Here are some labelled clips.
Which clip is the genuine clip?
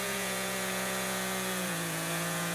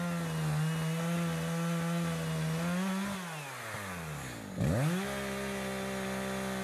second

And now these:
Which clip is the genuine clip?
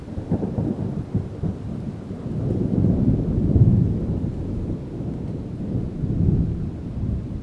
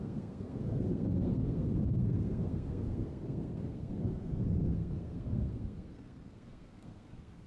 first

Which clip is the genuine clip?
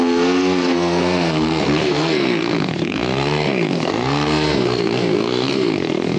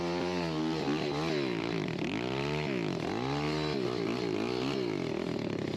second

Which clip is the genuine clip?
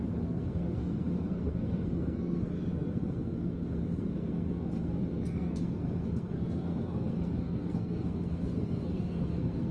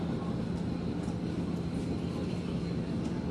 second